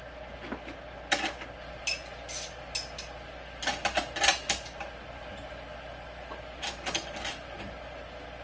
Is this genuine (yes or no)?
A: yes